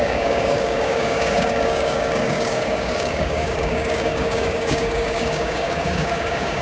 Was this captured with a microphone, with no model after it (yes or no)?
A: no